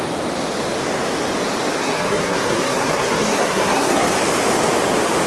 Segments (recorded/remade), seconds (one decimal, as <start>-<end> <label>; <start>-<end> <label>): 0.0-1.8 recorded; 1.8-4.1 remade; 4.1-5.3 recorded